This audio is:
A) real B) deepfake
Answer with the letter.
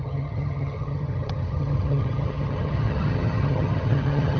B